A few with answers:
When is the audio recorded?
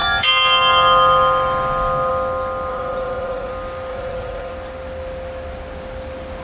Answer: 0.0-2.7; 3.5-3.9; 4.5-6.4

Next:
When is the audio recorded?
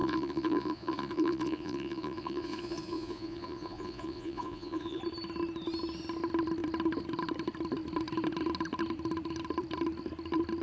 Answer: 5.0-10.6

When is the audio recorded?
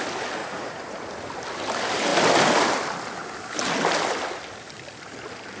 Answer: 0.0-0.4; 1.1-5.6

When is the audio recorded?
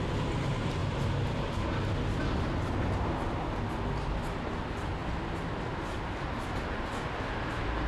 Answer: 0.0-7.9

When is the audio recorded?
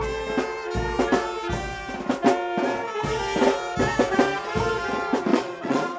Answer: 0.0-5.3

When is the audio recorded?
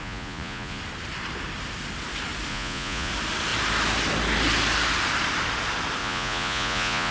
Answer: 0.8-2.5; 3.1-6.0